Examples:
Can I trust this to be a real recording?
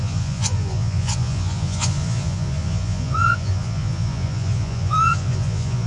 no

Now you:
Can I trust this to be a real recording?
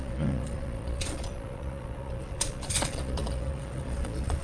no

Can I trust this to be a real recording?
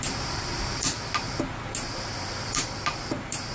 yes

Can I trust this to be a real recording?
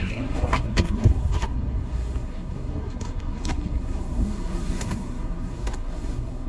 no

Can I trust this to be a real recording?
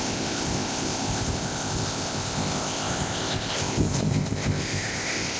no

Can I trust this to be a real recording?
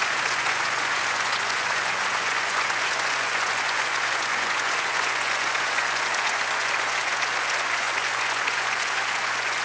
no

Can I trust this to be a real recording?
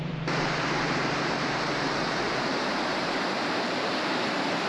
no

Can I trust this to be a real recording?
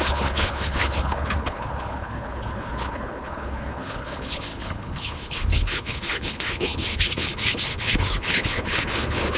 no